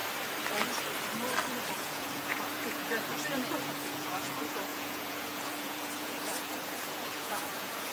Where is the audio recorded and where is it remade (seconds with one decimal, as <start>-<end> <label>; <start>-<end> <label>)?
0.0-1.7 recorded; 1.7-3.1 remade; 3.1-3.6 recorded; 3.6-7.9 remade